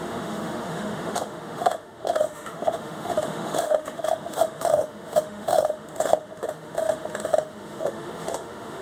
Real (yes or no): no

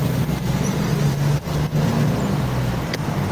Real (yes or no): yes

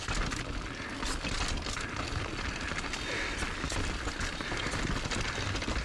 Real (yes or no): yes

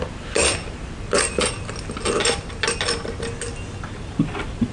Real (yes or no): yes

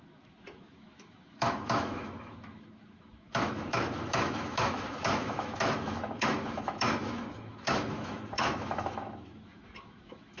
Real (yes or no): no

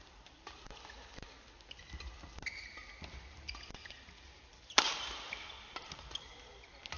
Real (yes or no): yes